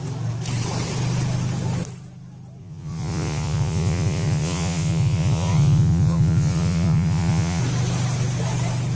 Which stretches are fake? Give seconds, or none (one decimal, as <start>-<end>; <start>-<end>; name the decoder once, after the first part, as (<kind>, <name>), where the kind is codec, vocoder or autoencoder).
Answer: 2.6-7.6 (vocoder, Vocos)